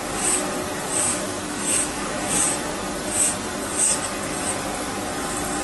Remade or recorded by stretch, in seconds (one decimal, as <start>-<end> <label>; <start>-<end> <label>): 0.0-1.1 recorded; 1.1-2.3 remade; 2.3-5.6 recorded